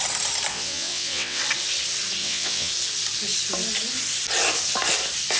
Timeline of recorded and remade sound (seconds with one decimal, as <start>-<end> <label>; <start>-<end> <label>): 0.0-0.5 recorded; 0.5-1.4 remade; 1.4-2.2 recorded; 2.2-2.7 remade; 2.7-5.4 recorded